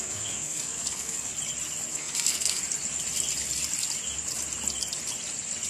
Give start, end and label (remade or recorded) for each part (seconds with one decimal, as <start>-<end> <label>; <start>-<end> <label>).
0.0-1.3 remade; 1.3-1.9 recorded; 1.9-2.6 remade; 2.6-5.7 recorded